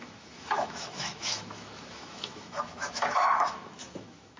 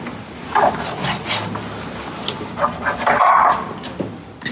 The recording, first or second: second